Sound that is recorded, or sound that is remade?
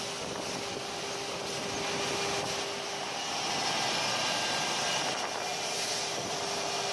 recorded